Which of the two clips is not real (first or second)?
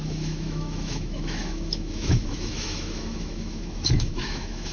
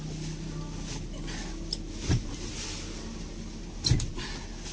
first